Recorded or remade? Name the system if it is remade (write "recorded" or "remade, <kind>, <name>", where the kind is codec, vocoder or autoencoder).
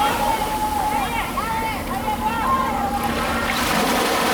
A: recorded